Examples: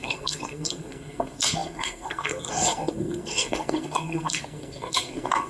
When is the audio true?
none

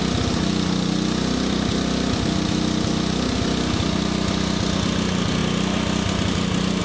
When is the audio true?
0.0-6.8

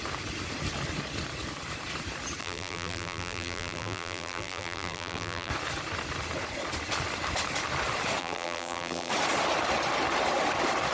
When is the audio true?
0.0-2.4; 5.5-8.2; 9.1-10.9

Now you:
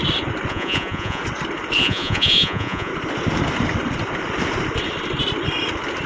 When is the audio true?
0.0-0.5; 1.2-1.8; 2.9-6.1

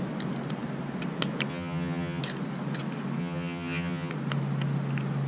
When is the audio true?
0.0-1.5; 2.2-3.2; 4.1-5.3